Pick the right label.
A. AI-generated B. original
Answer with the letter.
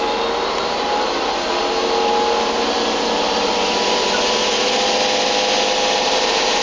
B